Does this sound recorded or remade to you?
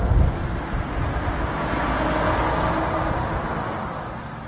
recorded